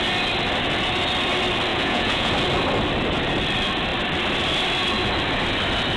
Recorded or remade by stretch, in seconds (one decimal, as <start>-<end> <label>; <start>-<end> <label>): 0.0-1.7 recorded; 1.7-2.3 remade; 2.3-6.0 recorded